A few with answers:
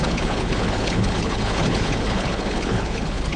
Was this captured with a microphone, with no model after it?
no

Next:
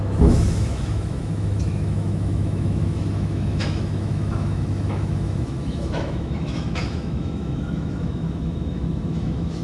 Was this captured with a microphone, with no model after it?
no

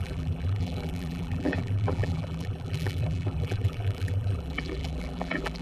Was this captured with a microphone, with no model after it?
no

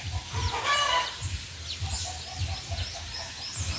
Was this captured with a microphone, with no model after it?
yes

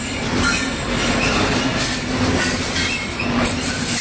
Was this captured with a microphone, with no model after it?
yes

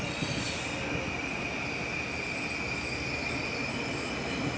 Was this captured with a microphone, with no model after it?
yes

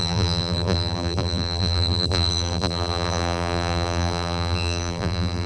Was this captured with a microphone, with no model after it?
no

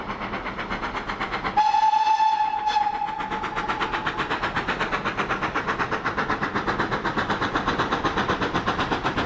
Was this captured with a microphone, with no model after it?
yes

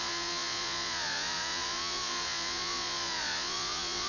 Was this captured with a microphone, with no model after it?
no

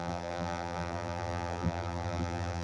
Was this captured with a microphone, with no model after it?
no